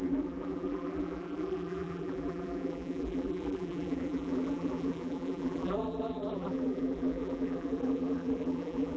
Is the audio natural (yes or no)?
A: no